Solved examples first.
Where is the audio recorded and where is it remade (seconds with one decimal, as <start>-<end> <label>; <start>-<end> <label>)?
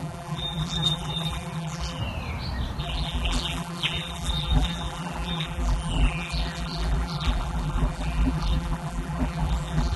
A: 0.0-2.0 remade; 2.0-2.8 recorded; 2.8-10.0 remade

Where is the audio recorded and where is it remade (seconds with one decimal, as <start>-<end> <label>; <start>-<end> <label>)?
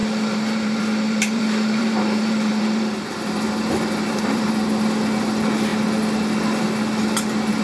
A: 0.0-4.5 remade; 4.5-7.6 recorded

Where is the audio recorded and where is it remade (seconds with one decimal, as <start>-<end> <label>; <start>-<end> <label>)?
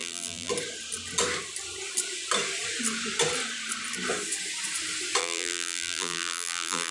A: 0.0-0.5 remade; 0.5-5.2 recorded; 5.2-6.9 remade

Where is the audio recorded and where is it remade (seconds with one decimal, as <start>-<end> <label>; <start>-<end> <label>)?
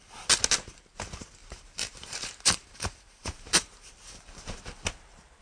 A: 0.0-1.4 recorded; 1.4-4.6 remade; 4.6-5.4 recorded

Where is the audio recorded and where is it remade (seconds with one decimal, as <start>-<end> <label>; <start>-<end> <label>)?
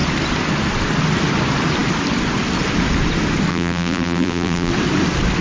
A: 0.0-3.5 recorded; 3.5-4.7 remade; 4.7-5.4 recorded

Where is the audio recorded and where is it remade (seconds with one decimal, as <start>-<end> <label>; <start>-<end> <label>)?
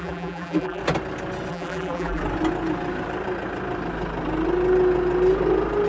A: 0.0-0.8 remade; 0.8-1.5 recorded; 1.5-2.2 remade; 2.2-5.9 recorded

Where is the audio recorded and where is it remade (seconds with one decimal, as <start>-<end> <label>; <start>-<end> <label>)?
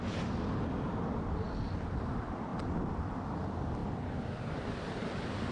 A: 0.0-5.5 recorded